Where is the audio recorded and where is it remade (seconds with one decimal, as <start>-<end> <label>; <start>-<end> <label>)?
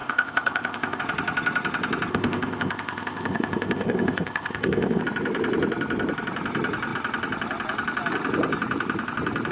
0.0-1.0 remade; 1.0-2.1 recorded; 2.1-5.0 remade; 5.0-9.5 recorded